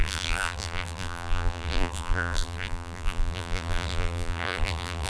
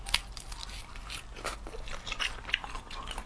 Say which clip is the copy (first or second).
first